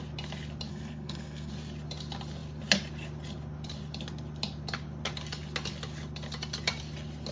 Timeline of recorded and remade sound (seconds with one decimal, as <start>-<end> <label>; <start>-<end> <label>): 0.0-0.7 recorded; 0.7-1.5 remade; 1.5-7.3 recorded